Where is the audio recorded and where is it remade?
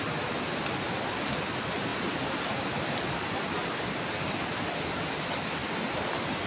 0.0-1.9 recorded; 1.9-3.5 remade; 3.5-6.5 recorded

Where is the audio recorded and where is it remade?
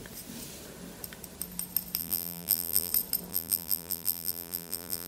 0.0-2.0 recorded; 2.0-2.9 remade; 2.9-3.3 recorded; 3.3-5.1 remade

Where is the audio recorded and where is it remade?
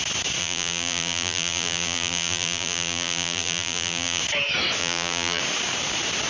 0.0-0.4 recorded; 0.4-4.2 remade; 4.2-4.8 recorded; 4.8-5.4 remade; 5.4-6.3 recorded